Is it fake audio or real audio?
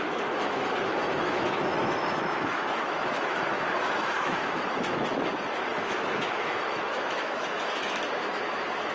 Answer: fake